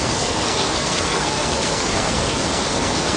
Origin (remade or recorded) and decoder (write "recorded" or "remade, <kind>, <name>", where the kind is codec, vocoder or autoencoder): remade, codec, SNAC